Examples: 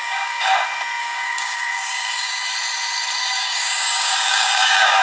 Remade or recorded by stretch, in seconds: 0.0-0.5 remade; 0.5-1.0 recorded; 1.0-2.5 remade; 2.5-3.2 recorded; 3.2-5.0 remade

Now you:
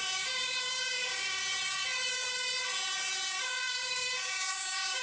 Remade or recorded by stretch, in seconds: 0.0-1.4 remade; 1.4-3.4 recorded; 3.4-5.0 remade

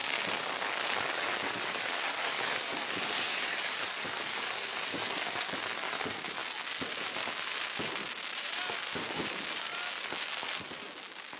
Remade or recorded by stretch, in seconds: 0.0-4.4 remade; 4.4-11.4 recorded

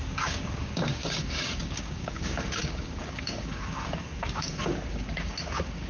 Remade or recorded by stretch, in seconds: 0.0-5.9 remade

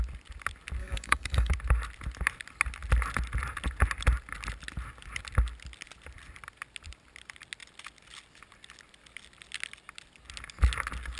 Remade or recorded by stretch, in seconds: 0.0-0.8 recorded; 0.8-1.5 remade; 1.5-11.2 recorded

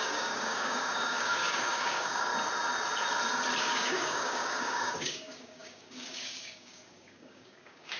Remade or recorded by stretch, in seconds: 0.0-2.3 remade; 2.3-3.6 recorded; 3.6-8.0 remade